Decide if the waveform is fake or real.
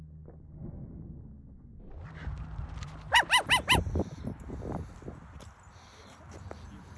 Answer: real